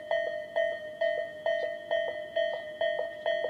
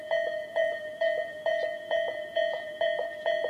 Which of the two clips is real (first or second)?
first